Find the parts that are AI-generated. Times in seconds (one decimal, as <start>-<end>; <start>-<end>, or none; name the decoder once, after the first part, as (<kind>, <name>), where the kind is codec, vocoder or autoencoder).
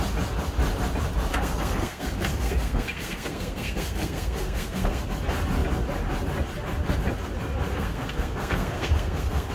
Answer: 1.3-5.1 (codec, SNAC); 7.7-9.5